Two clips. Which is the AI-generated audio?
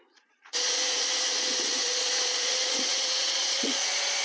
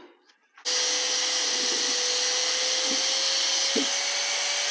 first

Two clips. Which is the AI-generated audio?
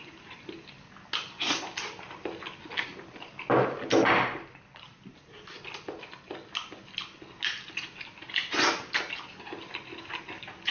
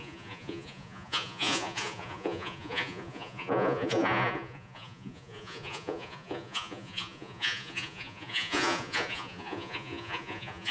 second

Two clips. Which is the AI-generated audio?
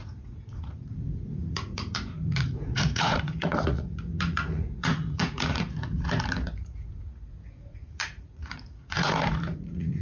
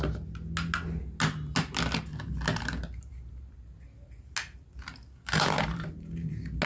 first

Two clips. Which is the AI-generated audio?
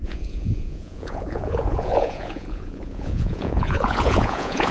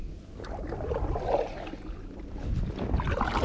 first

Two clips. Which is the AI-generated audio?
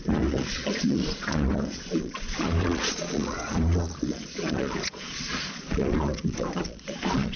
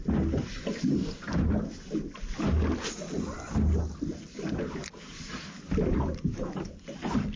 first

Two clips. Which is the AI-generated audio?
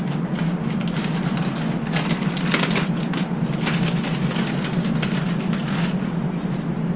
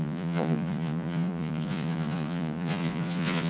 second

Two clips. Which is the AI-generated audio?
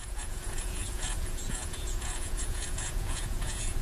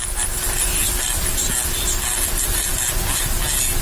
first